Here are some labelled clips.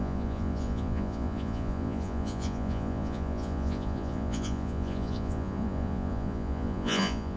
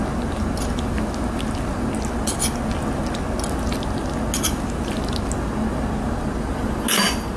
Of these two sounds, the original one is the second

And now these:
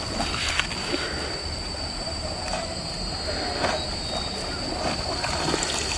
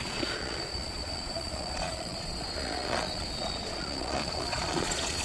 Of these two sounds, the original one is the first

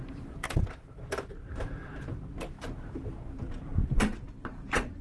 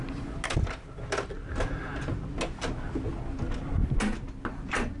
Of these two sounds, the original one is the second